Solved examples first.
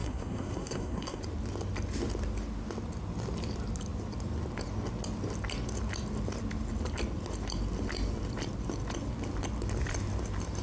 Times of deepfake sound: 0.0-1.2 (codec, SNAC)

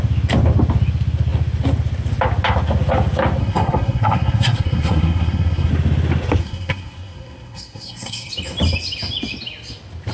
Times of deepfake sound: 3.4-5.7 (codec, SNAC); 6.4-8.3